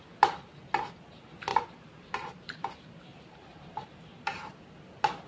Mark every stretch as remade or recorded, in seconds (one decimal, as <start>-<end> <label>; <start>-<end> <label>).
0.0-1.5 recorded; 1.5-2.7 remade; 2.7-3.1 recorded; 3.1-4.5 remade; 4.5-5.3 recorded